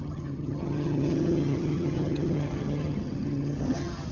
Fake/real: fake